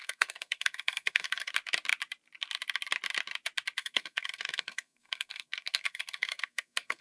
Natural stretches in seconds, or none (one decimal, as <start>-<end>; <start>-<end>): 1.5-3.8